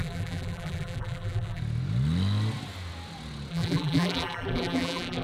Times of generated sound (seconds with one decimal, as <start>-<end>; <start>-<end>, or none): 0.0-1.6; 3.5-5.2